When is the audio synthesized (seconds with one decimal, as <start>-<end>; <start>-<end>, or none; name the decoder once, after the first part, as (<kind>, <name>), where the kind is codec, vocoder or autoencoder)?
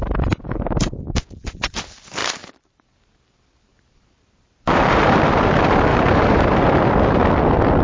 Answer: 2.2-2.9 (vocoder, BigVGAN v2); 3.7-5.2; 5.9-6.9